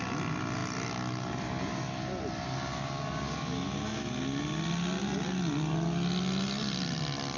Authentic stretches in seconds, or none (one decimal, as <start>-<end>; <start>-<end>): 0.0-7.4